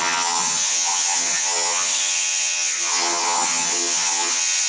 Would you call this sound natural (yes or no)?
no